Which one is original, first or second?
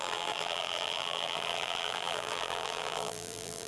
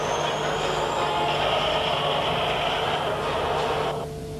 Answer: second